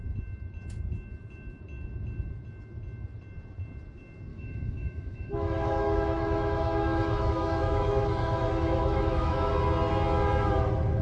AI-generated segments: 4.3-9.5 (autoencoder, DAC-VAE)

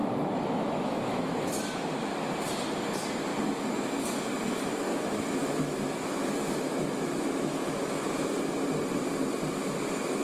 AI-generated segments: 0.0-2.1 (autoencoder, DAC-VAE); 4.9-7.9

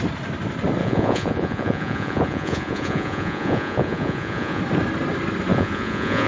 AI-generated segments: 0.8-4.6 (vocoder, Vocos); 5.5-6.3

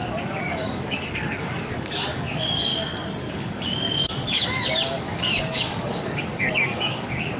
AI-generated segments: 0.0-2.7 (codec, DAC); 3.3-7.4

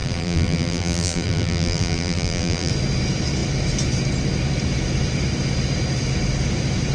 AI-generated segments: 0.0-2.7 (vocoder, BigVGAN v2)